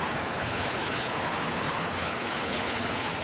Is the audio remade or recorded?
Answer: remade